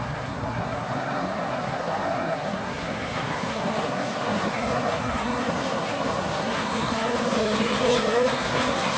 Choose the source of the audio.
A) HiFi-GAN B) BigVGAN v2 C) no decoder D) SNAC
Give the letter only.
D